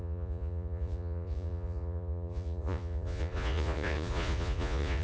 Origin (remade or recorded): remade